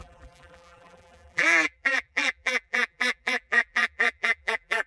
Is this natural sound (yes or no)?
no